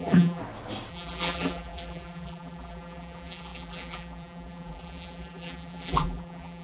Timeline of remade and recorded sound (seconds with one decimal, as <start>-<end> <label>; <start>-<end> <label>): 0.0-0.4 remade; 0.4-0.9 recorded; 0.9-6.6 remade